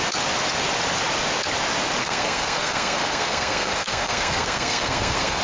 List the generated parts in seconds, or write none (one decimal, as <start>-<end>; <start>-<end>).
2.0-5.4